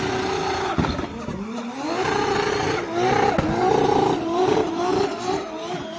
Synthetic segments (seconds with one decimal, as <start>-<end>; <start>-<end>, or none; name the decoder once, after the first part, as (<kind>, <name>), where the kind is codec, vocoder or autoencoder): 3.6-4.9 (vocoder, BigVGAN v2)